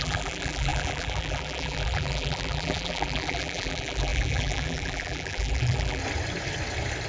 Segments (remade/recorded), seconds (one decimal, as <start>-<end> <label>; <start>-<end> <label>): 0.0-6.0 remade; 6.0-7.1 recorded